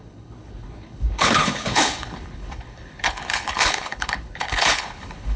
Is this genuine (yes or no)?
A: no